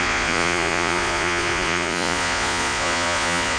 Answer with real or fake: fake